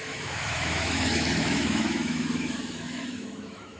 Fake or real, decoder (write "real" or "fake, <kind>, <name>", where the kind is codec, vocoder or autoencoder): fake, autoencoder, DAC-VAE